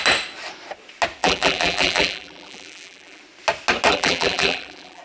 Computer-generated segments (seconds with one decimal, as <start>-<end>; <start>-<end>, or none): 1.2-3.2; 3.9-5.0